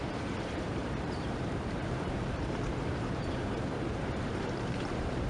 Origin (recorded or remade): remade